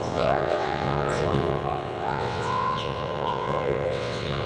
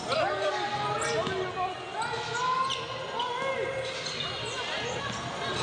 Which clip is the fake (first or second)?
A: first